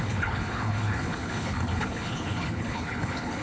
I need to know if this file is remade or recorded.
remade